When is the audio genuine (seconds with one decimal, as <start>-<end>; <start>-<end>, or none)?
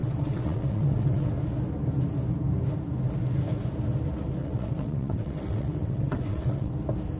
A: 1.3-4.4; 6.7-7.2